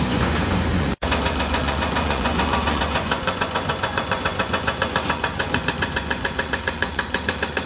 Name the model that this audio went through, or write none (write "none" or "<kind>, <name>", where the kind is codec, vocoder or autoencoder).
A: vocoder, Vocos